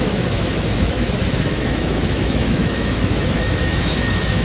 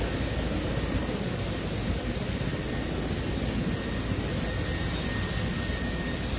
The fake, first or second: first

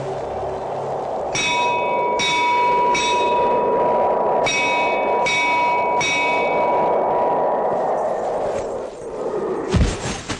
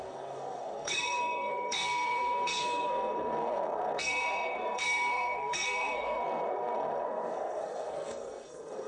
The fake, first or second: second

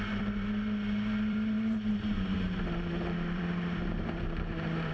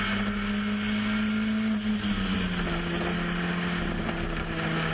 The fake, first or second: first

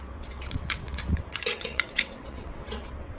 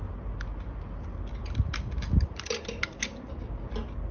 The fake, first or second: first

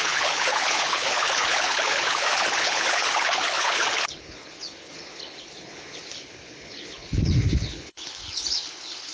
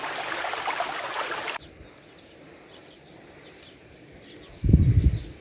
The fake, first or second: first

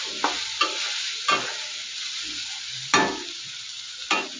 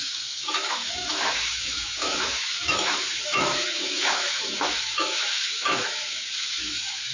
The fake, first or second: second